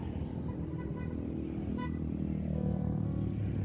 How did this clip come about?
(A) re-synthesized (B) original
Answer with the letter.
B